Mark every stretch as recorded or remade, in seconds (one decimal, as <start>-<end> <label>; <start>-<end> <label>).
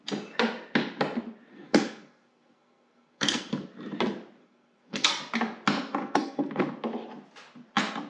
0.0-1.5 recorded; 1.5-3.5 remade; 3.5-4.4 recorded; 4.4-5.1 remade; 5.1-6.0 recorded; 6.0-6.6 remade; 6.6-8.1 recorded